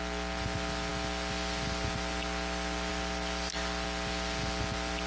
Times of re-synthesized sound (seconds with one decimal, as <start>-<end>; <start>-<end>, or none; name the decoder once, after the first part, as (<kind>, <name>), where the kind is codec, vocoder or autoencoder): none